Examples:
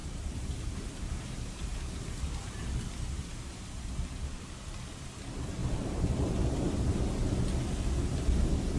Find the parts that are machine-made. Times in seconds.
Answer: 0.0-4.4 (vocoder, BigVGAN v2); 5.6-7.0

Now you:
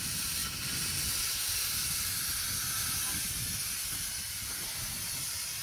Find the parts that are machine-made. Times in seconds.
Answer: 0.4-2.1 (vocoder, BigVGAN v2)

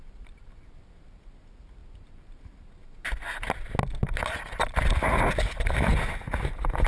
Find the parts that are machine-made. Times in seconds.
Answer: none

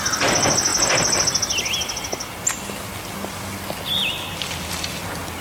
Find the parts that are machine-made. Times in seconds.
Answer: none

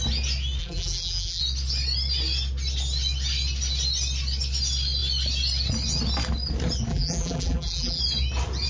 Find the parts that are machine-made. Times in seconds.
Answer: 0.6-1.4 (vocoder, BigVGAN v2); 6.9-8.0

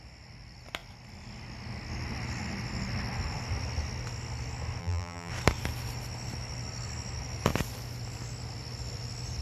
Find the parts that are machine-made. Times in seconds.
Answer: 4.8-5.3 (vocoder, BigVGAN v2)